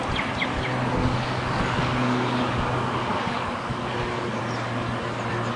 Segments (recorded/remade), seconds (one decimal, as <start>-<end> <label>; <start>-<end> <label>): 0.0-1.0 recorded; 1.0-4.4 remade; 4.4-5.6 recorded